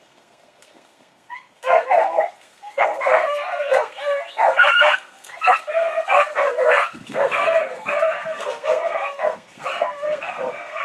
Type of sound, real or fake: fake